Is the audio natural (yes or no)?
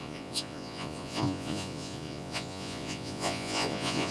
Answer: no